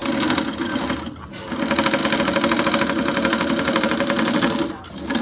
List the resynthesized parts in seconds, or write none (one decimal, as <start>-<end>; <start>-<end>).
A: 2.0-4.7